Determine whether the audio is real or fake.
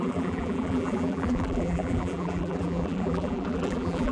fake